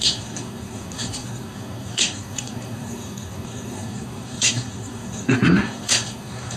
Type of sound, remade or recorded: remade